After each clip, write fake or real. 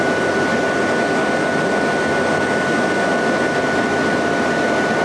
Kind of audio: real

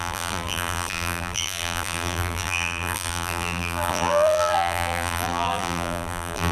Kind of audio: fake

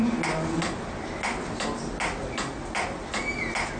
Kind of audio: real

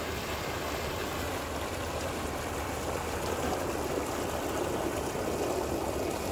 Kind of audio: real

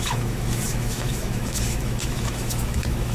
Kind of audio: fake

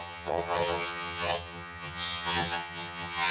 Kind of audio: fake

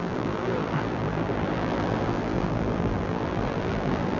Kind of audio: fake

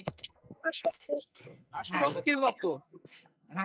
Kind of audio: fake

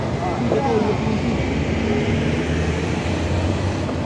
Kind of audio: real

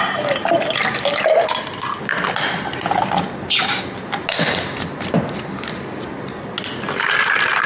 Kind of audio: real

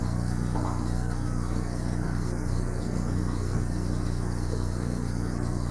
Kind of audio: fake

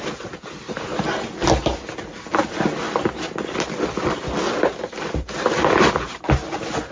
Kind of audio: real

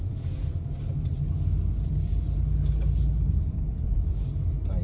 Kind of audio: real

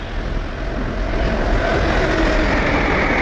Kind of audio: real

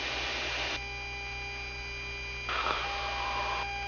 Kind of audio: real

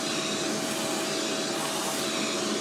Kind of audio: real